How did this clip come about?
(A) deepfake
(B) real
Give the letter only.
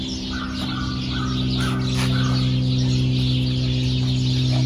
B